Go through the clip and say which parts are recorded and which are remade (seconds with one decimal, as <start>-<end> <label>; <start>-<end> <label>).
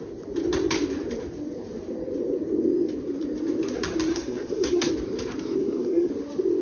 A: 0.0-4.1 recorded; 4.1-4.9 remade; 4.9-5.6 recorded; 5.6-6.1 remade; 6.1-6.6 recorded